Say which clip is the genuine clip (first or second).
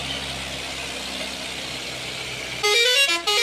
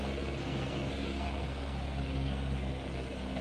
first